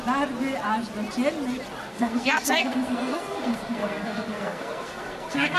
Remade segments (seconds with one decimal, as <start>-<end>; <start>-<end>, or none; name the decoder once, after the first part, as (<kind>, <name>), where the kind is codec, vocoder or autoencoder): 1.9-5.6 (codec, SNAC)